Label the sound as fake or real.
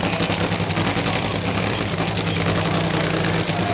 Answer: real